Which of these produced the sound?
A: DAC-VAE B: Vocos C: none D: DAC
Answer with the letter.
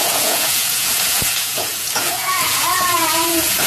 B